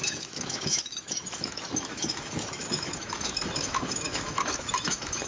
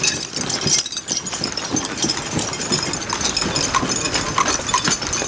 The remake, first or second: first